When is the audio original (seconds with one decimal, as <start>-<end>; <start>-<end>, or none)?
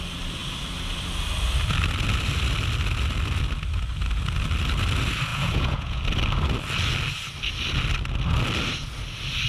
0.0-5.3; 6.0-9.5